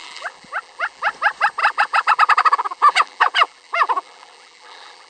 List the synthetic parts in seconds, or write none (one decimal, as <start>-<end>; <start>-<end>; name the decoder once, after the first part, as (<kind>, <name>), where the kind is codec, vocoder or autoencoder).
0.0-1.1 (vocoder, BigVGAN v2); 1.6-5.1